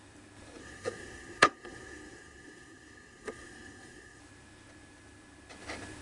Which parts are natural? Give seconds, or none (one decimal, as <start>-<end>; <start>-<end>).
0.0-0.6; 4.2-6.0